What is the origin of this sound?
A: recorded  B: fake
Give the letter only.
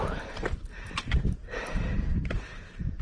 B